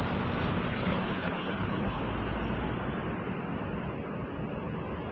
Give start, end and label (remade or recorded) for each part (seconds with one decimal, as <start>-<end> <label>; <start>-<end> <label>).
0.0-0.7 recorded; 0.7-2.0 remade; 2.0-5.1 recorded